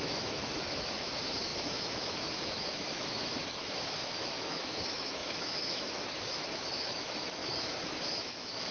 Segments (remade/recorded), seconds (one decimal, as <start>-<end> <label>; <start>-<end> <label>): 0.0-8.7 remade